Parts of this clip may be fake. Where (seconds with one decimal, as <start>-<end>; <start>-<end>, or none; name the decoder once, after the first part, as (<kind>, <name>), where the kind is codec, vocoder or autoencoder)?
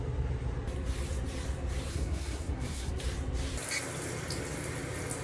1.9-2.9 (codec, SNAC)